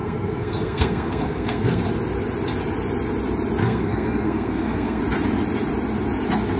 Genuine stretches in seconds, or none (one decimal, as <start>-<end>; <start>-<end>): 1.8-3.6; 5.0-6.6